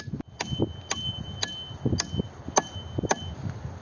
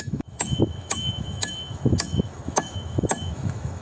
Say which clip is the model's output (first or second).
second